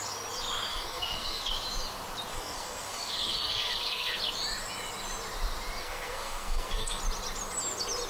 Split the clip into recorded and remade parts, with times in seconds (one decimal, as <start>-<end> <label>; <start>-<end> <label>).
0.0-0.7 recorded; 0.7-1.5 remade; 1.5-2.3 recorded; 2.3-4.2 remade; 4.2-5.8 recorded; 5.8-7.0 remade; 7.0-8.1 recorded